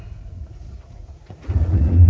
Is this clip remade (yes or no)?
yes